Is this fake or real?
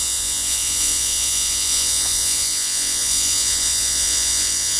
fake